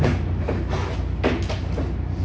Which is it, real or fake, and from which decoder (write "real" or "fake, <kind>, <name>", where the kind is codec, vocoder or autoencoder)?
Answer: real